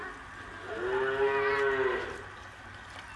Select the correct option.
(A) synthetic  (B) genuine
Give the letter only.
B